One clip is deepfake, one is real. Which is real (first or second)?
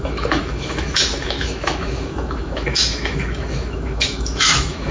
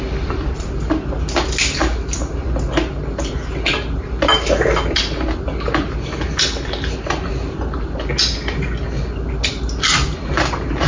second